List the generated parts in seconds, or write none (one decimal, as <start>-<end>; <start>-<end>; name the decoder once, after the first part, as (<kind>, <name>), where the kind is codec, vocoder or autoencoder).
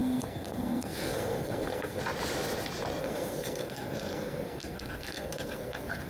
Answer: 0.0-2.0 (codec, SNAC); 3.0-6.1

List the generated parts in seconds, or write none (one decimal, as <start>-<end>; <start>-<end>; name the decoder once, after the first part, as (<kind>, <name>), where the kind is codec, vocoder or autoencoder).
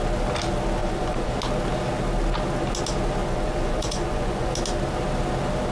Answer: 0.8-1.3 (vocoder, Vocos); 3.2-4.5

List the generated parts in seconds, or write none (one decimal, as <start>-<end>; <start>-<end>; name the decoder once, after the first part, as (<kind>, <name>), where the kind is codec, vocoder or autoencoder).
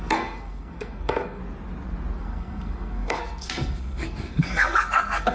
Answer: 0.0-1.4 (codec, SNAC); 2.2-5.3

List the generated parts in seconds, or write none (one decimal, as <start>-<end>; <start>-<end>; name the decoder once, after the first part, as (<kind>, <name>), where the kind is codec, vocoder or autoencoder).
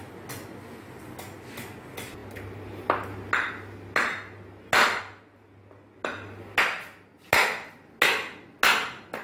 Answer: none